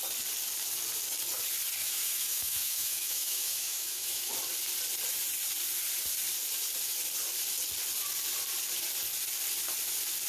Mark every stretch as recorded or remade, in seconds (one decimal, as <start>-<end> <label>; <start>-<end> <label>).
0.0-1.8 recorded; 1.8-4.3 remade; 4.3-10.3 recorded